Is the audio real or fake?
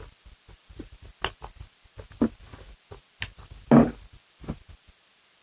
real